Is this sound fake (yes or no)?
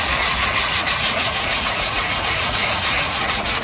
yes